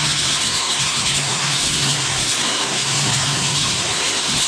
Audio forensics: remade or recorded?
remade